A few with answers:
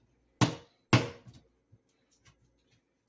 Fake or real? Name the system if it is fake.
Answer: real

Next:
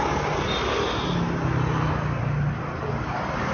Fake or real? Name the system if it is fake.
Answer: real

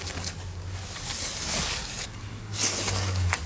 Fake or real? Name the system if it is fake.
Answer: fake, codec, DAC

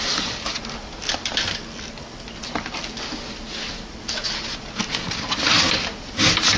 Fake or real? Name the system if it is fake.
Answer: real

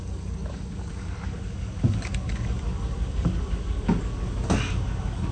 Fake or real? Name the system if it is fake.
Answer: fake, codec, DAC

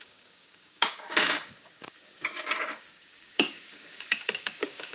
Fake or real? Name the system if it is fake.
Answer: fake, codec, DAC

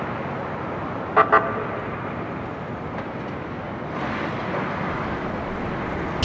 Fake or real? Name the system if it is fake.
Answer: real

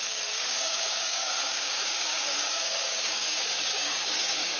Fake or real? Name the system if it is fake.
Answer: fake, codec, DAC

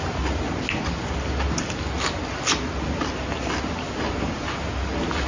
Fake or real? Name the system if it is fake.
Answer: real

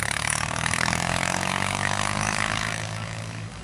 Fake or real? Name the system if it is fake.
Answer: fake, codec, DAC